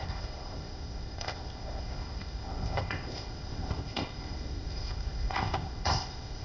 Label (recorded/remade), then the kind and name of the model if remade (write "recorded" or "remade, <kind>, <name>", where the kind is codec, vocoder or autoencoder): remade, codec, ZipCodec